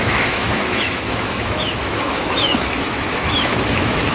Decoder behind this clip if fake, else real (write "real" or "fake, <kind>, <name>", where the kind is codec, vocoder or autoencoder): fake, autoencoder, DAC-VAE